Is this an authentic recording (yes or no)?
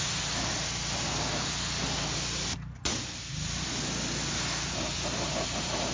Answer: yes